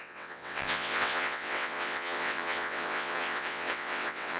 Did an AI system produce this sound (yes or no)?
yes